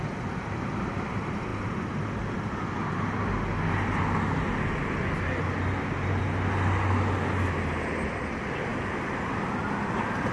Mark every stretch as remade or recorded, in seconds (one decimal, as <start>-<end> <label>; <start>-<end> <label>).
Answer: 0.0-10.3 recorded